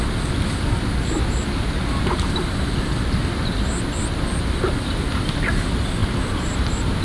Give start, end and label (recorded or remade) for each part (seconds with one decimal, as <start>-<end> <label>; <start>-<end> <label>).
0.0-6.0 recorded; 6.0-7.0 remade